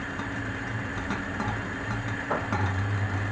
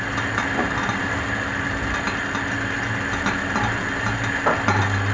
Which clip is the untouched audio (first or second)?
second